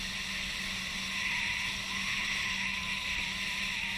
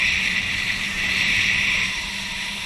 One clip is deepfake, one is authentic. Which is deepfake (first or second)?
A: second